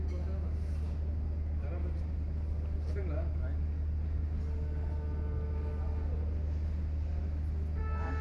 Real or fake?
real